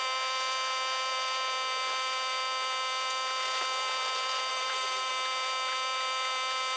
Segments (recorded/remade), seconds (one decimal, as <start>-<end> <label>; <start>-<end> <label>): 0.0-4.5 recorded; 4.5-5.1 remade; 5.1-6.8 recorded